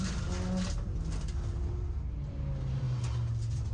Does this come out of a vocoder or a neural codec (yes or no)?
no